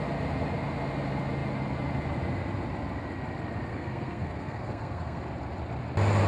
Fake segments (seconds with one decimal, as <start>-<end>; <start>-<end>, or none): 3.7-5.2

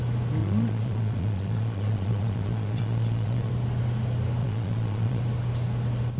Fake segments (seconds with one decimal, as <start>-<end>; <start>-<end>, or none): 0.4-3.5; 4.4-5.2

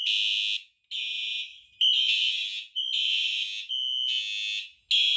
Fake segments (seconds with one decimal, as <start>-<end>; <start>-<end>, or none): none

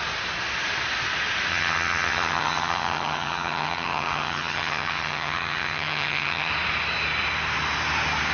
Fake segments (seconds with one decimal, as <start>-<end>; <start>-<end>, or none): 1.5-6.5

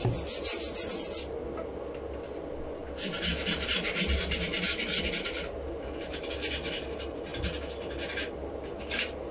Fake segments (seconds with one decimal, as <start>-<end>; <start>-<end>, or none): none

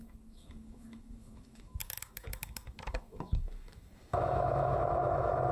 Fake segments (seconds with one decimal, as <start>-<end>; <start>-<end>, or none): 0.0-5.5

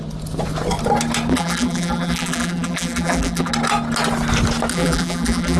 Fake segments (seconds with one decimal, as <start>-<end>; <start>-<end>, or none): 1.3-3.5; 4.7-5.6